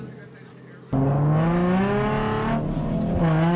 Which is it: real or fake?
real